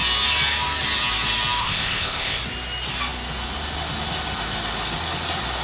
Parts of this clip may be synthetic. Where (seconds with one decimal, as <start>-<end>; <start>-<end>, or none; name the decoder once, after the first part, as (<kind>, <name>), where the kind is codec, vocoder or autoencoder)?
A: 1.6-2.4 (codec, ZipCodec)